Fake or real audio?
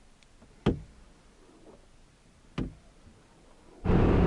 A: real